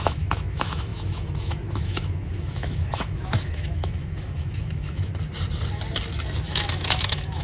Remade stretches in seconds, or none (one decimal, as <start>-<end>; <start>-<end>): 0.0-5.1; 6.4-7.4